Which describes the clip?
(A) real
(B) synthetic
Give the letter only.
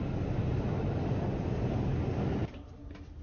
A